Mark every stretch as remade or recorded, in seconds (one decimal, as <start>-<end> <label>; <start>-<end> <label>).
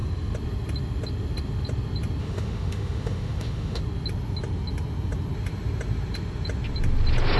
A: 0.0-2.2 recorded; 2.2-3.8 remade; 3.8-7.4 recorded